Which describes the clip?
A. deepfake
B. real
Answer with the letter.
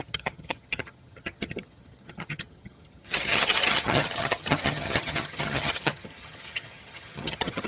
A